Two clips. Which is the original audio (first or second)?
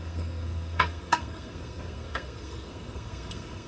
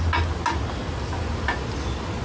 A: second